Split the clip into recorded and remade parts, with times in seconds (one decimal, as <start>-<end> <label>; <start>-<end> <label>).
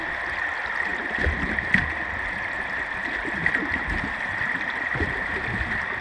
0.0-0.9 remade; 0.9-2.3 recorded; 2.3-3.4 remade; 3.4-4.1 recorded; 4.1-6.0 remade